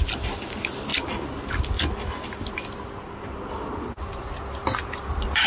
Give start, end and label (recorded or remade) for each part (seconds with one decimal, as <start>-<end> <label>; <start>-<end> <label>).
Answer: 0.0-5.5 recorded